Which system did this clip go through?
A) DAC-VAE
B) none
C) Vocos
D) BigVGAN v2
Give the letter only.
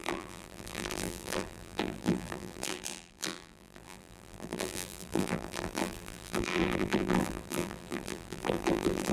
D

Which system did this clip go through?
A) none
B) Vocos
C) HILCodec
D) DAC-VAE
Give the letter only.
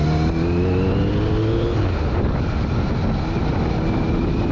A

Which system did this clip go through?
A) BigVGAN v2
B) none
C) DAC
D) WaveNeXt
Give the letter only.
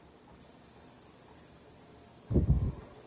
B